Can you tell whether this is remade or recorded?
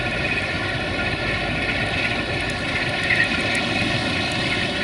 recorded